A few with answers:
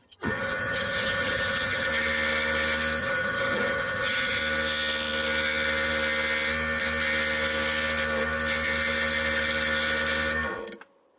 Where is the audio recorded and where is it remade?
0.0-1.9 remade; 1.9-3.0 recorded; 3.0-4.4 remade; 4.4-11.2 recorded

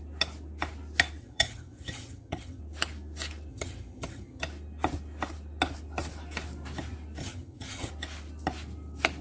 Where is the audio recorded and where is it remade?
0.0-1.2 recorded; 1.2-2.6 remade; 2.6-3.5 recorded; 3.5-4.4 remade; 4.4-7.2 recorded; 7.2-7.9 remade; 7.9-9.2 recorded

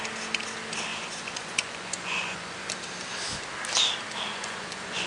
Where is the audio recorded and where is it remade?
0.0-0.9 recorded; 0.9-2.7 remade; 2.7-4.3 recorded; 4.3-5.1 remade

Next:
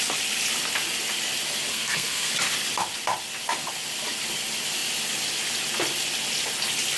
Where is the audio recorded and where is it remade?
0.0-1.7 recorded; 1.7-2.3 remade; 2.3-7.0 recorded

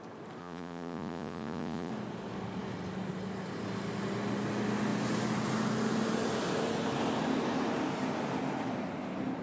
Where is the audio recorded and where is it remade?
0.0-0.4 recorded; 0.4-1.9 remade; 1.9-9.4 recorded